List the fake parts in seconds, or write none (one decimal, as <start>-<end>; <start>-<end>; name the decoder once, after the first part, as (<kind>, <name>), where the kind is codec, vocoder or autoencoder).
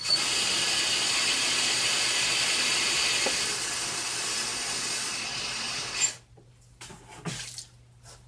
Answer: 0.0-4.5 (vocoder, BigVGAN v2); 6.5-8.3